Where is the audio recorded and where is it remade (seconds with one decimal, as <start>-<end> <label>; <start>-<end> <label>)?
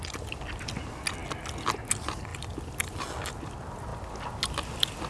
0.0-2.3 recorded; 2.3-2.9 remade; 2.9-5.1 recorded